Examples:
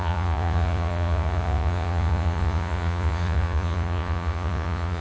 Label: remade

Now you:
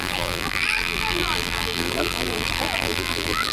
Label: remade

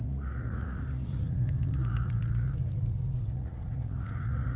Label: remade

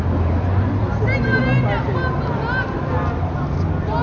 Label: recorded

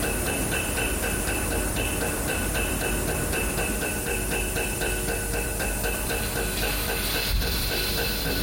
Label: remade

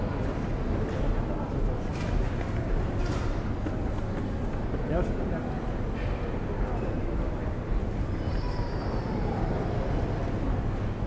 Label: recorded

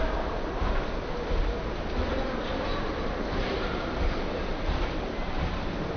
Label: remade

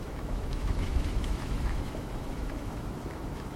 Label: remade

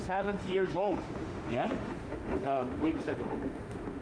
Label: remade